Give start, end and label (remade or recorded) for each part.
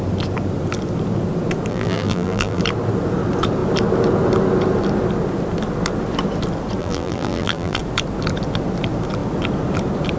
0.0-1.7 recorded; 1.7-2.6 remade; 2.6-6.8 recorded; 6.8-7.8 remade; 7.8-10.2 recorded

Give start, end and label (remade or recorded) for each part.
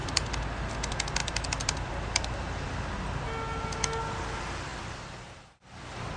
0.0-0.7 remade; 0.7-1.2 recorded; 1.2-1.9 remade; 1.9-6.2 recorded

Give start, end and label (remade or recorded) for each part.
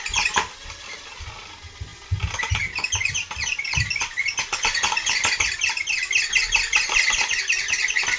0.0-1.9 remade; 1.9-2.5 recorded; 2.5-8.2 remade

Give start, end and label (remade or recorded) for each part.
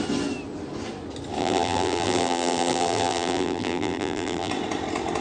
0.0-1.4 recorded; 1.4-4.5 remade; 4.5-5.2 recorded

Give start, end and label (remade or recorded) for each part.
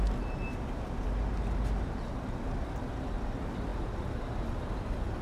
0.0-5.2 recorded